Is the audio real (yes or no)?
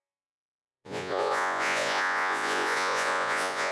no